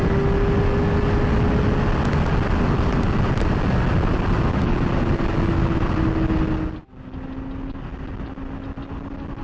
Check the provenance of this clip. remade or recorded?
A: recorded